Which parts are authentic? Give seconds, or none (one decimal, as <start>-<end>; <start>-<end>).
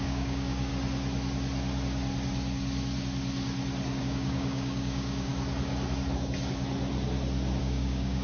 0.7-4.0; 5.3-7.6